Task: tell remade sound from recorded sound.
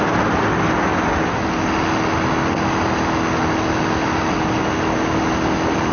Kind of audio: recorded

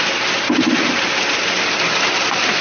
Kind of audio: recorded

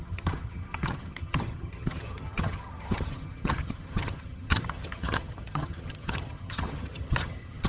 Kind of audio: remade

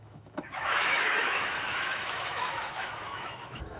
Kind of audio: remade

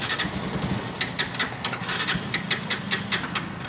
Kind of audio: recorded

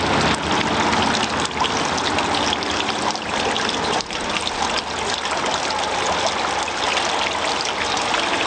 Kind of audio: recorded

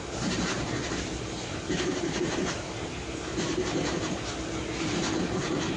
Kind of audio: remade